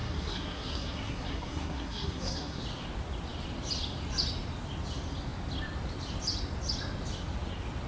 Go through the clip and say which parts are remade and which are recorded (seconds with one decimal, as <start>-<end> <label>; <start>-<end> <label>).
0.0-2.6 remade; 2.6-7.9 recorded